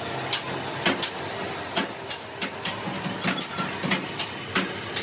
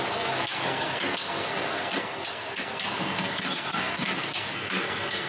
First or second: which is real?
first